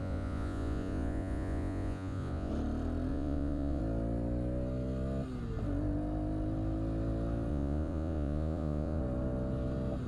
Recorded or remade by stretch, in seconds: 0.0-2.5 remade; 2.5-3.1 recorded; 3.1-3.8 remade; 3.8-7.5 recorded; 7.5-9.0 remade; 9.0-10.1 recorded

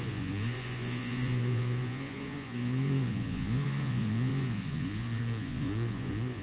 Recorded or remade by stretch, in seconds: 0.0-6.4 remade